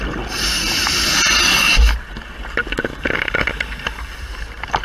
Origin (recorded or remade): recorded